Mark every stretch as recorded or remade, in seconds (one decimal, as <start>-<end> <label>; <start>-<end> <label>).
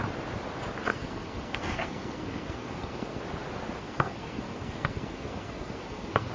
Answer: 0.0-0.9 recorded; 0.9-3.2 remade; 3.2-3.8 recorded; 3.8-6.3 remade